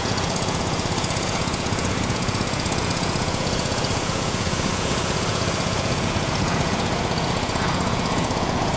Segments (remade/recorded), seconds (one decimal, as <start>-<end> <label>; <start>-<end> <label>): 0.0-8.8 remade